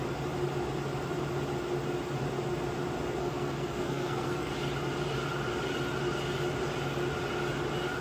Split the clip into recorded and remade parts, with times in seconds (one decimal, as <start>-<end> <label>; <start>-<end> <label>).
0.0-3.2 recorded; 3.2-4.5 remade; 4.5-8.0 recorded